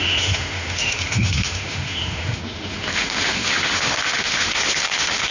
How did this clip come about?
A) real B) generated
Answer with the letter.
B